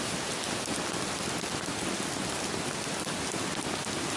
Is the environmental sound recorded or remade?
recorded